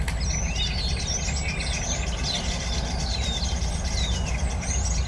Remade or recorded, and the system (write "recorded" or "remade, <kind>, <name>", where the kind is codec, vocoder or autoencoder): recorded